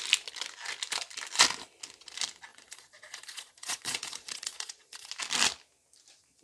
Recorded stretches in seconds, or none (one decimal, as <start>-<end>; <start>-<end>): 0.0-2.5; 5.1-6.4